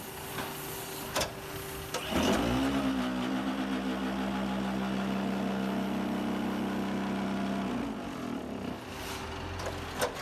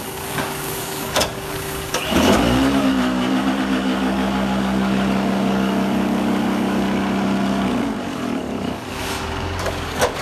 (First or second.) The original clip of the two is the first